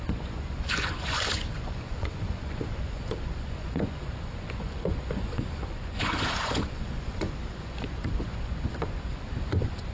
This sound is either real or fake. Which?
fake